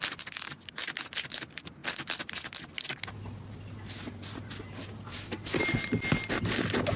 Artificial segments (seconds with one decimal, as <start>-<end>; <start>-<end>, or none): none